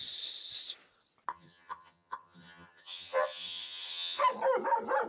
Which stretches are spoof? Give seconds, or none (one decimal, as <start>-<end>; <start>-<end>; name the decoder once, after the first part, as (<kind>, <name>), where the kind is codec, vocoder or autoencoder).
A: 1.3-4.2 (vocoder, HiFi-GAN)